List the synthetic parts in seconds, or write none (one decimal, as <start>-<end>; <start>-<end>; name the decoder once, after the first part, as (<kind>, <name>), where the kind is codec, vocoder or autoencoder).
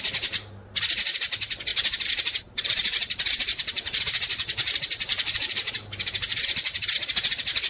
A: 1.7-5.7 (vocoder, BigVGAN v2); 6.3-6.8